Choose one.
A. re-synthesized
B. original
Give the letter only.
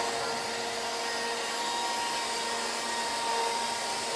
B